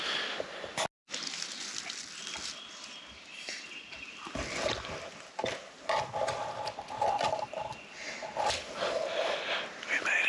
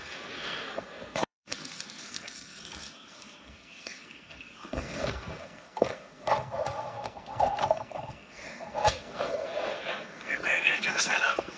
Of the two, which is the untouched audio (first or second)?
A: first